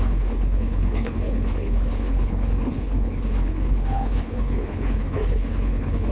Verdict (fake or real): fake